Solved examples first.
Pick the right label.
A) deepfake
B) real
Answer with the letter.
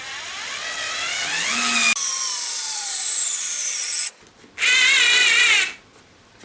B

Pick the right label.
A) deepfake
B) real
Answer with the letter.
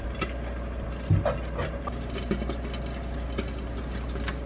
B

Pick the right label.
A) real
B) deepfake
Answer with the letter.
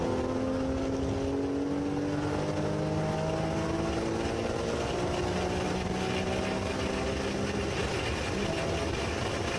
A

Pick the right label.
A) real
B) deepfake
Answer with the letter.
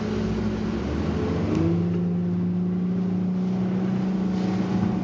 A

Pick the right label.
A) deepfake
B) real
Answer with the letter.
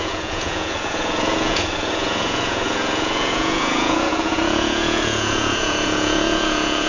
A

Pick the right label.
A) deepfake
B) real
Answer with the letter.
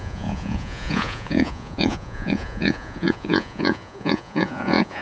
A